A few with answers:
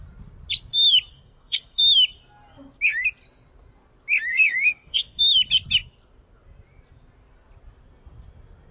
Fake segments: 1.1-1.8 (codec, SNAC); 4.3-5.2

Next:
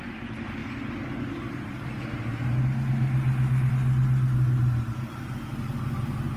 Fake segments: none

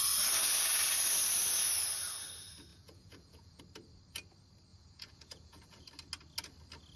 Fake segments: 2.7-3.6 (vocoder, Vocos); 4.7-5.9

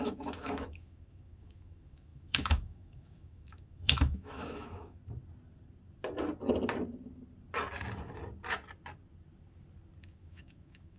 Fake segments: 0.0-5.0 (autoencoder, DAC-VAE); 10.0-11.0

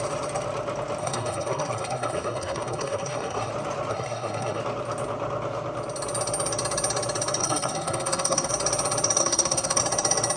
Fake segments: 1.0-3.5 (codec, SNAC); 3.9-4.6; 7.4-8.5; 9.2-9.8